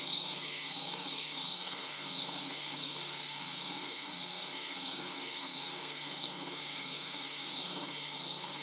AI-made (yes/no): yes